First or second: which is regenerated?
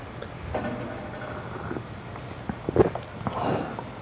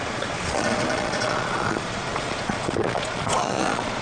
second